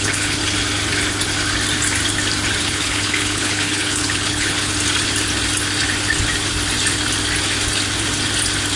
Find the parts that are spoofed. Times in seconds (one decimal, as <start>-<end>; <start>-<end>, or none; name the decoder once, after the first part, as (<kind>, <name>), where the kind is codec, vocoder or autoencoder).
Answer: 0.0-0.4 (codec, HILCodec); 2.6-4.7